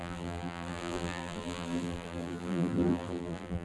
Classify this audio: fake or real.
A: fake